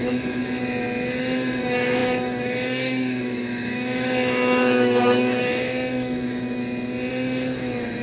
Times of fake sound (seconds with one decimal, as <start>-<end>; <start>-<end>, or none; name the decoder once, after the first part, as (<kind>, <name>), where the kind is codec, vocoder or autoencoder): 0.0-0.4 (autoencoder, DAC-VAE); 1.2-6.6; 7.1-8.0